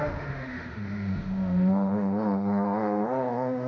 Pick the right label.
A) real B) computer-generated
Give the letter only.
B